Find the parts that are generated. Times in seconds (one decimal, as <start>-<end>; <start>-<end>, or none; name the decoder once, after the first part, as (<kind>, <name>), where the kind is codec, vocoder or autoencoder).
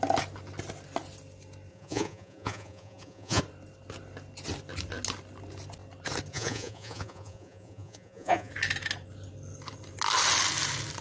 1.7-3.4 (vocoder, Vocos); 6.3-8.5